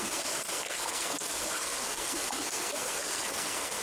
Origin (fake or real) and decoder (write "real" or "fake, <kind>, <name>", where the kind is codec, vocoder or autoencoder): fake, codec, SNAC